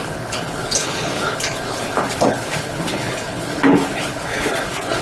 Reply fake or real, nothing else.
fake